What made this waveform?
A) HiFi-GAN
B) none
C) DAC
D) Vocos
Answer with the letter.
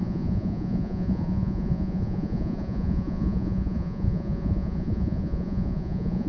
D